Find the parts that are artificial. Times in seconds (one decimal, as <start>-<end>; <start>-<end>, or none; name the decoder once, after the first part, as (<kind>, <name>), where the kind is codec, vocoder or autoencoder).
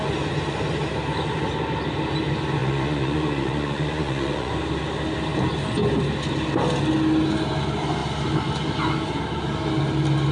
2.6-4.5 (vocoder, Vocos)